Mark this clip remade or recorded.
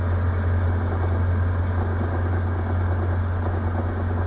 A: recorded